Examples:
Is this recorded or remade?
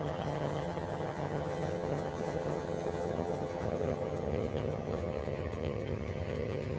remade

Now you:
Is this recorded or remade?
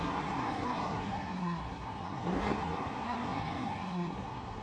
remade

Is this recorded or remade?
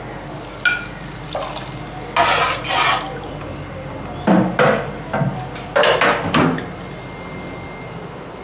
recorded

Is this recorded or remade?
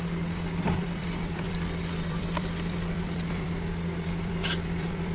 remade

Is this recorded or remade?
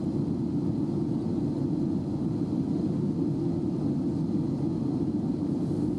recorded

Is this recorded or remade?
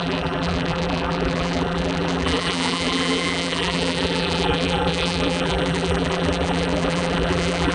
remade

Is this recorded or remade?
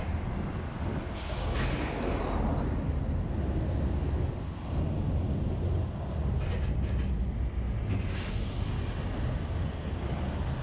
recorded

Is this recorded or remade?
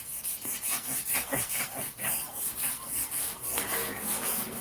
remade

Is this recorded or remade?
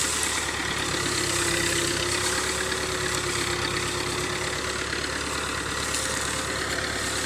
recorded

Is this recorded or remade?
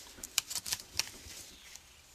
recorded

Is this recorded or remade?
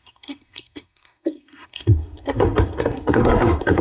remade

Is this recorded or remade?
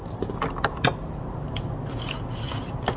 recorded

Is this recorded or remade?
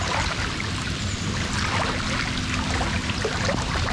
recorded